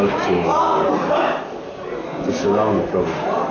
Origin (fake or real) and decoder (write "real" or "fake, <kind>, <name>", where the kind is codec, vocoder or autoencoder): real